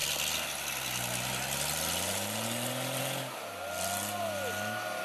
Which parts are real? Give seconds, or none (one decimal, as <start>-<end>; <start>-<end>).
0.0-5.0

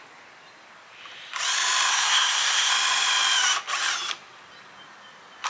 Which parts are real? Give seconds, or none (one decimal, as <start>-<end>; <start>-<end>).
0.0-1.9; 2.7-5.5

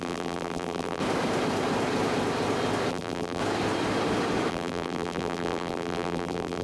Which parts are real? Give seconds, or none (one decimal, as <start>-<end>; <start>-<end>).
1.0-2.9; 3.4-4.5

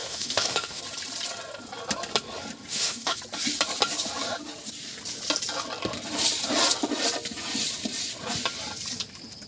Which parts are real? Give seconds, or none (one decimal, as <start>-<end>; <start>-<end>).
0.8-2.7; 3.2-9.5

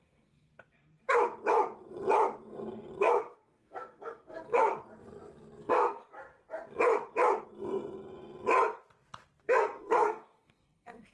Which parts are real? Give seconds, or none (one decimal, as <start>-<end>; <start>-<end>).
0.5-3.0; 4.7-5.6; 6.0-9.4